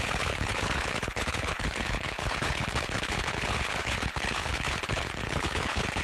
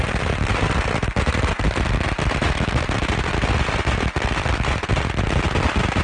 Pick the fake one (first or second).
first